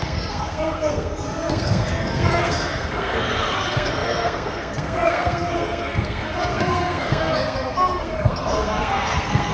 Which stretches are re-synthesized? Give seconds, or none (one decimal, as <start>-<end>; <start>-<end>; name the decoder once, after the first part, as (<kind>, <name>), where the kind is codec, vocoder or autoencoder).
0.0-9.5 (codec, SNAC)